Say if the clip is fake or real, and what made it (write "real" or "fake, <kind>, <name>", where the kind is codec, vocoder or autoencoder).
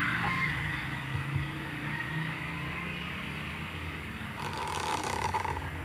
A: fake, codec, DAC